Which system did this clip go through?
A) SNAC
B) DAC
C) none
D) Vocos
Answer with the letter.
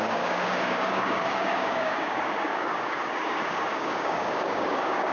B